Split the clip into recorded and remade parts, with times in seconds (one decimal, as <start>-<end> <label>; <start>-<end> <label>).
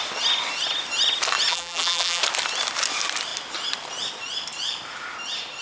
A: 0.0-1.5 recorded; 1.5-2.2 remade; 2.2-5.6 recorded